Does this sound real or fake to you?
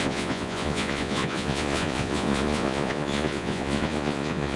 fake